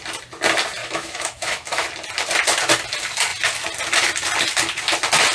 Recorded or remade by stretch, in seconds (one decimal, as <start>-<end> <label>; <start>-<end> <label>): 0.0-0.8 recorded; 0.8-1.9 remade; 1.9-5.3 recorded